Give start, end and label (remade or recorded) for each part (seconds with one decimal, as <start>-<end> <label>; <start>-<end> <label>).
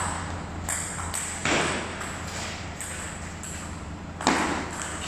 0.0-5.1 recorded